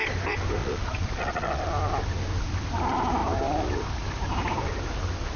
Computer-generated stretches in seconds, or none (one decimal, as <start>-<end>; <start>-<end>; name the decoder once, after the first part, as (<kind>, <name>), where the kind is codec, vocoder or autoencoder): 0.6-1.7 (vocoder, Vocos)